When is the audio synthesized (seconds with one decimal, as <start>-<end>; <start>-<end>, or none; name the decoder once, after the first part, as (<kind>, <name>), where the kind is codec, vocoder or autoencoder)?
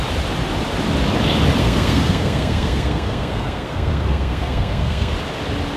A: 1.6-5.1 (codec, SNAC)